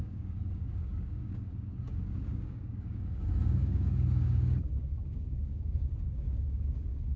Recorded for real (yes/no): no